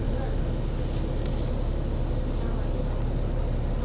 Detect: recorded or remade recorded